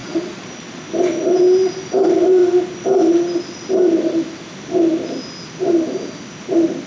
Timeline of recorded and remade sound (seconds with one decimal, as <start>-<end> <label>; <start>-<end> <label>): 0.0-0.8 remade; 0.8-6.9 recorded